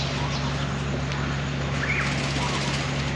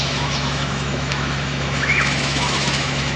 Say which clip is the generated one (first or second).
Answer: second